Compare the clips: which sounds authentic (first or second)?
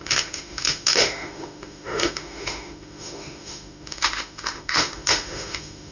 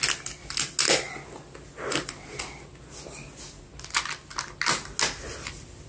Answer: second